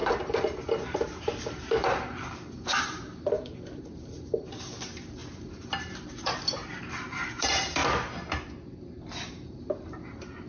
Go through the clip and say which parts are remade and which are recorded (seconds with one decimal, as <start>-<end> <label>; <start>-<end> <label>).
0.0-7.8 remade; 7.8-9.3 recorded; 9.3-10.5 remade